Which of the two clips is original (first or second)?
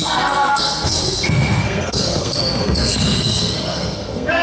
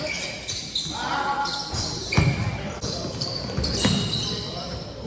second